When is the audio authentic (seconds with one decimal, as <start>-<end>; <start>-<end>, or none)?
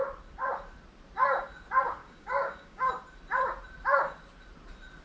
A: 0.0-2.0; 2.9-5.0